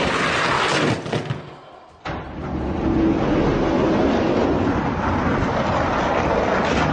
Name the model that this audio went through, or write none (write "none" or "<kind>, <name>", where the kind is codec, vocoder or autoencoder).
none